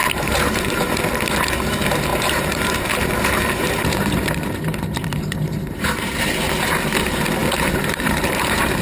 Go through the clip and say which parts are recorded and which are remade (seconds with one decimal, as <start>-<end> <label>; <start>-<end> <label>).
0.0-0.9 remade; 0.9-2.1 recorded; 2.1-6.1 remade; 6.1-7.4 recorded; 7.4-8.8 remade